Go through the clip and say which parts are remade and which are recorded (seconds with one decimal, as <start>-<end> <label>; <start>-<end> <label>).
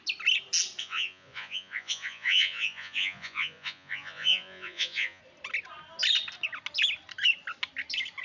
0.0-0.8 recorded; 0.8-5.2 remade; 5.2-8.2 recorded